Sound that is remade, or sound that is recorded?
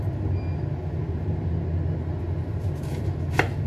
recorded